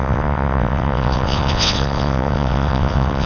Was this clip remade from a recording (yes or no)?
yes